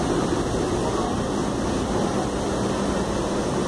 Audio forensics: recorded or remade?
recorded